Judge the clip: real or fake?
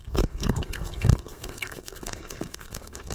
fake